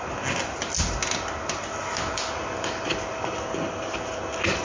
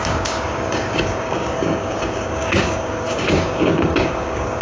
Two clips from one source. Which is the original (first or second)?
first